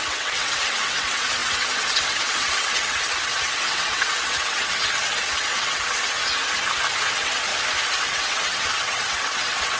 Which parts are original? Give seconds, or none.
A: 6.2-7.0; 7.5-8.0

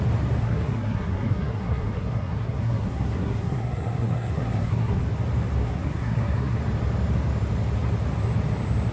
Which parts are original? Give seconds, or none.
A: 0.0-0.4; 5.0-5.6; 6.6-8.9